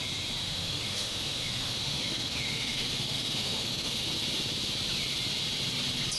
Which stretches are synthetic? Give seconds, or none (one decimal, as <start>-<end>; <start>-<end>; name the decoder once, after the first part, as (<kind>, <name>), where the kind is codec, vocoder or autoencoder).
0.4-4.1 (autoencoder, DAC-VAE)